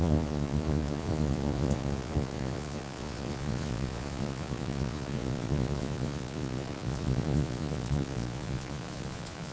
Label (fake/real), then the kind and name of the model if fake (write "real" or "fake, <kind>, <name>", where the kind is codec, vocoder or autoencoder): fake, vocoder, Vocos